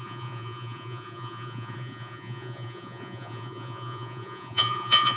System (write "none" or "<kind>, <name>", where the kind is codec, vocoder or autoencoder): vocoder, Vocos